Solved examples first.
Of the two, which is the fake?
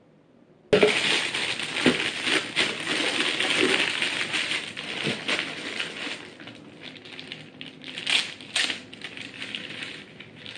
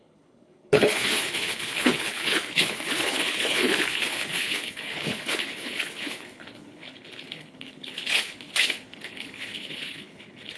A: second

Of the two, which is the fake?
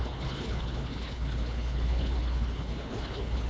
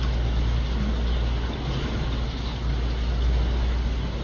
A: first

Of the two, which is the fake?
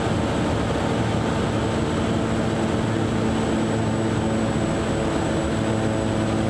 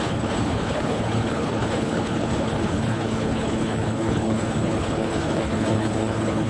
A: second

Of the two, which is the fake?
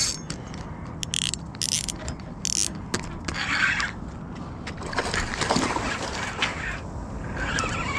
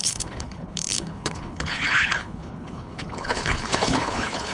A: second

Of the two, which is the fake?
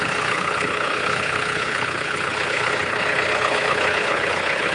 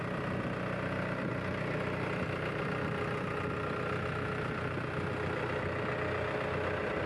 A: first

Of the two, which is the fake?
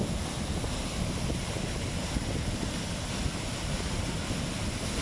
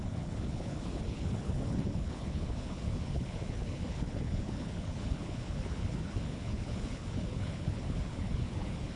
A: second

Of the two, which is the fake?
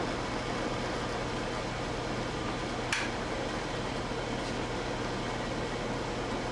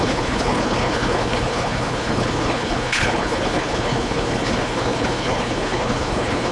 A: second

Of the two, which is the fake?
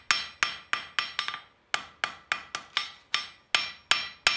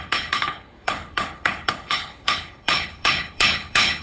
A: second